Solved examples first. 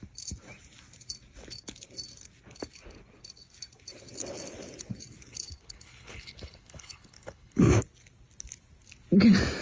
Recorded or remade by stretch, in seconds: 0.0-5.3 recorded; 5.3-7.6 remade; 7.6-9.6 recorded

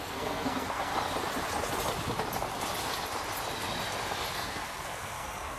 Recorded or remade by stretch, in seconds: 0.0-0.9 remade; 0.9-4.3 recorded; 4.3-5.6 remade

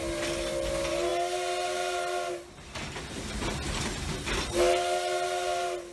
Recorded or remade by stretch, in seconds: 0.0-5.9 recorded

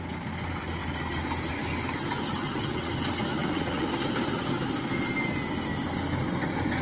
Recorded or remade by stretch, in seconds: 0.0-2.3 recorded; 2.3-2.9 remade; 2.9-3.3 recorded; 3.3-3.9 remade; 3.9-6.8 recorded

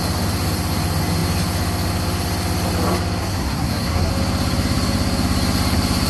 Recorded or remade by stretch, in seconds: 0.0-3.2 recorded; 3.2-4.1 remade; 4.1-6.1 recorded

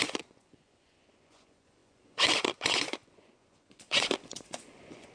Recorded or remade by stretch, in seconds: 0.0-5.1 remade